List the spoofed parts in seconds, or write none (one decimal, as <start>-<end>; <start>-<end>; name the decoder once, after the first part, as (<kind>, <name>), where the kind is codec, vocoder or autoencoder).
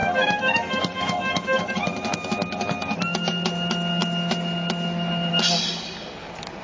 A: 0.0-1.6 (autoencoder, DAC-VAE)